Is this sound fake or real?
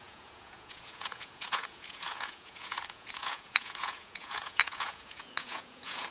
fake